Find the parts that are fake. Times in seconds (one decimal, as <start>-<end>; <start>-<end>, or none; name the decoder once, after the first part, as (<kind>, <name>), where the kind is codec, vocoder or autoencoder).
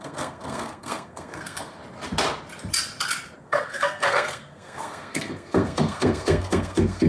0.0-1.8 (codec, SNAC); 3.4-7.1